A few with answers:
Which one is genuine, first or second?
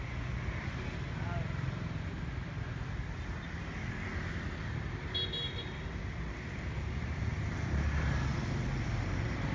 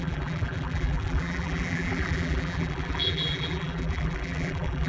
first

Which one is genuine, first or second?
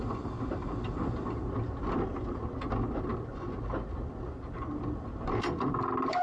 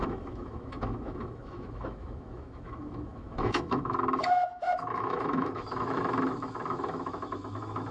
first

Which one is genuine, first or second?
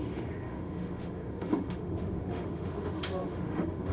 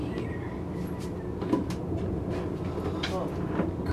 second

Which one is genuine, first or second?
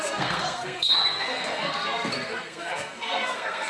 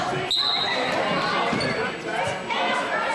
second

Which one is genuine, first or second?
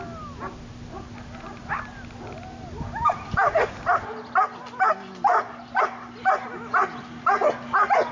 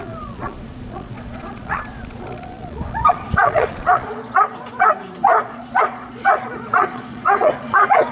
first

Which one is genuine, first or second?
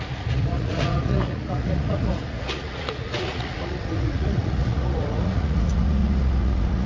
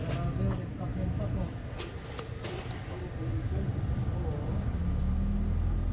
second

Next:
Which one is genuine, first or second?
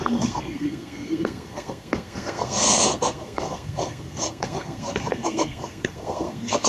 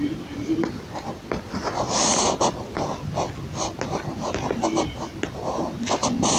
second